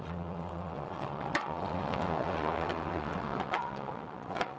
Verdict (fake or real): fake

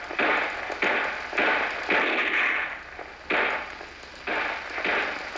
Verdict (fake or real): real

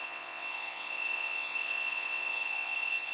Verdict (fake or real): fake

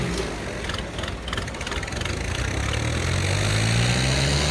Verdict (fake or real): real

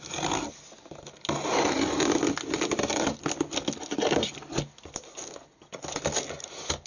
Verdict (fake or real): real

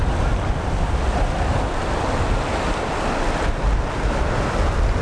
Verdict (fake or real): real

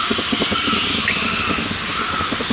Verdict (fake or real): real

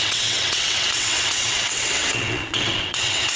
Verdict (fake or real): fake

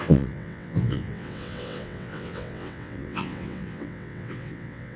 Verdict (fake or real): fake